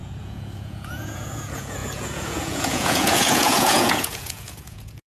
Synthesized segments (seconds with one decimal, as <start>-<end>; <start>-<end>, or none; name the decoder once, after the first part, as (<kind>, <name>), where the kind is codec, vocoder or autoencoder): 0.0-5.1 (vocoder, Vocos)

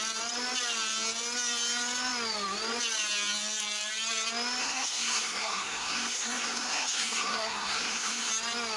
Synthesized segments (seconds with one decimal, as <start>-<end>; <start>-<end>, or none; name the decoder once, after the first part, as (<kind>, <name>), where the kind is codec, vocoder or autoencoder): 4.6-8.3 (codec, SNAC)